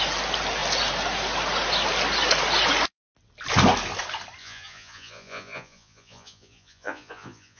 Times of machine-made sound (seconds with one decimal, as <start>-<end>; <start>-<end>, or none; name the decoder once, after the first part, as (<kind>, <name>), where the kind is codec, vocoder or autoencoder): 4.4-7.6 (vocoder, Vocos)